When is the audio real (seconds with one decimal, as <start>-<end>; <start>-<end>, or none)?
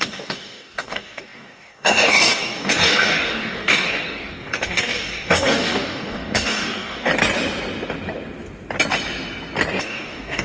7.1-9.8